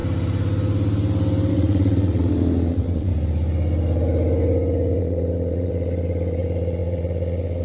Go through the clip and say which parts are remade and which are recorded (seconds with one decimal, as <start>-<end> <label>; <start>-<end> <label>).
0.0-1.5 recorded; 1.5-3.1 remade; 3.1-5.0 recorded; 5.0-7.6 remade